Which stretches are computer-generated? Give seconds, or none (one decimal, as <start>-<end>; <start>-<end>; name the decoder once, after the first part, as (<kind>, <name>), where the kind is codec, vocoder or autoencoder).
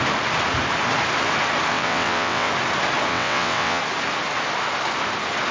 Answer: 1.7-2.5 (vocoder, WaveNeXt); 3.1-3.8